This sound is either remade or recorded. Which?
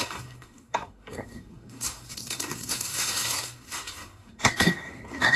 remade